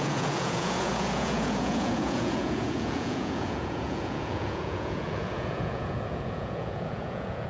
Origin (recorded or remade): remade